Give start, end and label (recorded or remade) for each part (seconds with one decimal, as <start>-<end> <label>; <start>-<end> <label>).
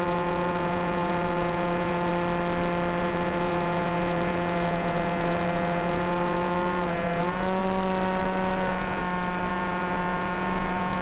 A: 0.0-2.1 remade; 2.1-3.0 recorded; 3.0-7.6 remade; 7.6-8.2 recorded; 8.2-9.0 remade; 9.0-9.5 recorded; 9.5-11.0 remade